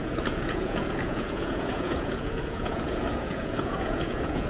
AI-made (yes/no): yes